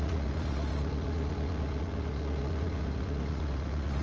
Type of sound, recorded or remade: remade